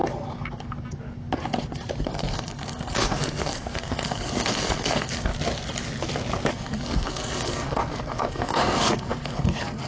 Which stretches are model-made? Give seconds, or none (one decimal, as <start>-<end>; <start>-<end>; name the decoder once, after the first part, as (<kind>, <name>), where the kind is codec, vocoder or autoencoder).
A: 2.0-5.3 (codec, SNAC); 6.5-9.9